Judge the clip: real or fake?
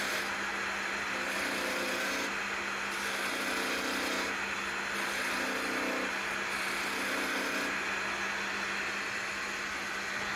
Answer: real